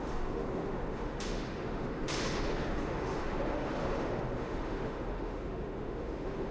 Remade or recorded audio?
remade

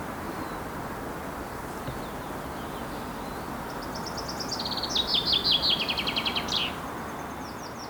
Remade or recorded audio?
recorded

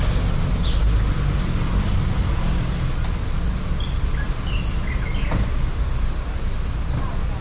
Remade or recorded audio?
recorded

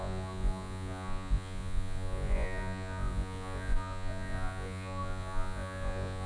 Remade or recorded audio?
remade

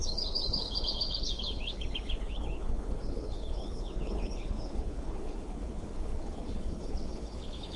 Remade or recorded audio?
remade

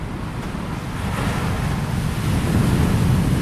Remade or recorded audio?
recorded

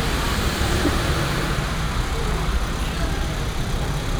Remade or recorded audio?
remade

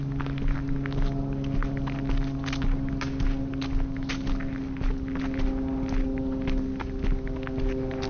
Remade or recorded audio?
recorded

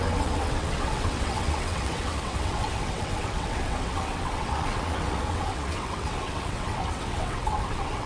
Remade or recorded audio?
remade